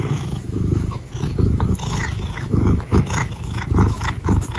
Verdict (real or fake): fake